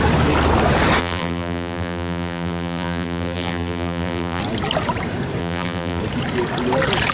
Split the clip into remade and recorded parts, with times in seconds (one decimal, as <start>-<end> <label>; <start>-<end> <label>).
0.0-1.0 recorded; 1.0-4.4 remade; 4.4-5.4 recorded; 5.4-6.0 remade; 6.0-7.1 recorded